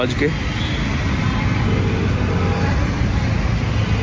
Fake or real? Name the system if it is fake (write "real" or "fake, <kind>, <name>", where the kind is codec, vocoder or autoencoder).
real